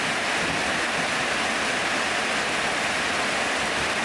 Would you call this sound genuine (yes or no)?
yes